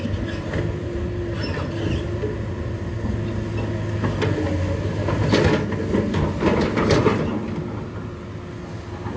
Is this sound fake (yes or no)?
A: no